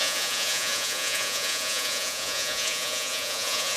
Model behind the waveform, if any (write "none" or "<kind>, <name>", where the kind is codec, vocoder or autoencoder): vocoder, Vocos